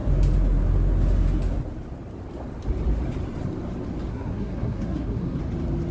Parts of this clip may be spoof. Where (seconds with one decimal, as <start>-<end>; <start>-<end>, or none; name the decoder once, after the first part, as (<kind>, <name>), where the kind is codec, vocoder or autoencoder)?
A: 4.1-5.4 (codec, SNAC)

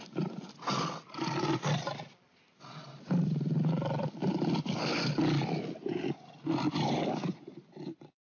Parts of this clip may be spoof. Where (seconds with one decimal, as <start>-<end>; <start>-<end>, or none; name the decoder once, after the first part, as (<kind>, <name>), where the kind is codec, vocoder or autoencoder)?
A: none